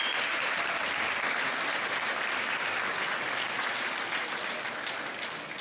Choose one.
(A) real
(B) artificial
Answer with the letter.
A